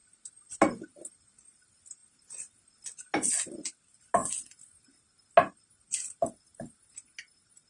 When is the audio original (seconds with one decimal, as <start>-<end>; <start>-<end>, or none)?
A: 0.0-7.7